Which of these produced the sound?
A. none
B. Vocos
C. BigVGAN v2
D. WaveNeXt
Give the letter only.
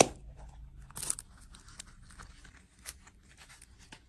A